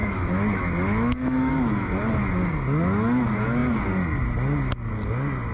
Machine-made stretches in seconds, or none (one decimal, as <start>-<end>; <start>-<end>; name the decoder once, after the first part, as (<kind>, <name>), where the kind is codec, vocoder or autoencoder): 0.0-1.5 (autoencoder, DAC-VAE)